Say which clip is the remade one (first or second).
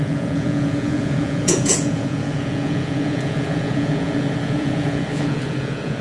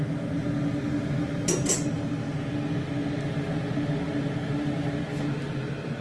first